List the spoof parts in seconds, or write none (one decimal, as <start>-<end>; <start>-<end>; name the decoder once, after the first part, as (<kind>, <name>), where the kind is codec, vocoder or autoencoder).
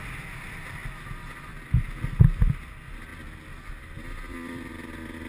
0.0-0.8 (vocoder, BigVGAN v2); 2.4-3.1; 3.7-5.3